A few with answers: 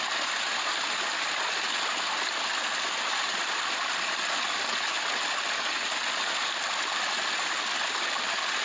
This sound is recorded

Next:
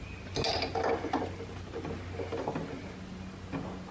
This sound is recorded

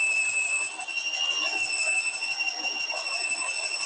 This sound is recorded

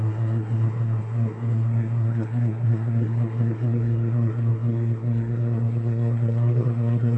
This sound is remade